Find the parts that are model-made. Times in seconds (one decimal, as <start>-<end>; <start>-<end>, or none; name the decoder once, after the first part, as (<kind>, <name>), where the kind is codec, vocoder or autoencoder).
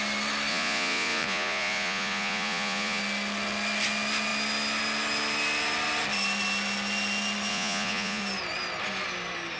0.5-3.0 (vocoder, Vocos); 7.5-8.2